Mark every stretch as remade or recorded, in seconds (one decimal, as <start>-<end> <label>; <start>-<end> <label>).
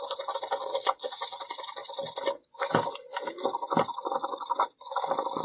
0.0-0.6 recorded; 0.6-1.4 remade; 1.4-5.4 recorded